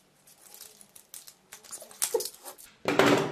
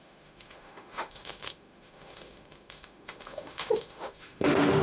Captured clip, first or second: first